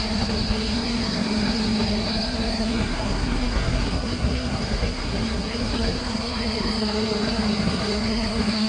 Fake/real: fake